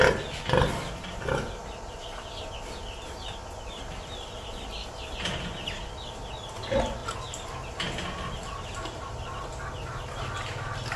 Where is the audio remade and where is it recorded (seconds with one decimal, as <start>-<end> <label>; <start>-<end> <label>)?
0.0-11.0 recorded